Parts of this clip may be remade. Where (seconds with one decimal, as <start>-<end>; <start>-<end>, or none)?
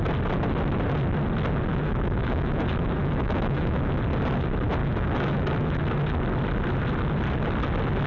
1.7-4.0; 4.8-5.8